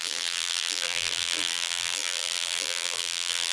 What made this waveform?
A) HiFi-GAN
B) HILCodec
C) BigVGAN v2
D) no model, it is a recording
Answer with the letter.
C